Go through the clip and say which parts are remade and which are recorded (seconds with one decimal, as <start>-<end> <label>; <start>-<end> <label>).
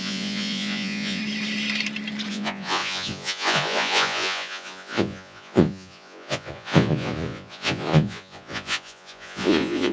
0.0-1.2 remade; 1.2-2.3 recorded; 2.3-9.9 remade